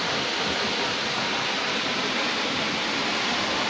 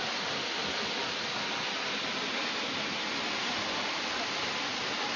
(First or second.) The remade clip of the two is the first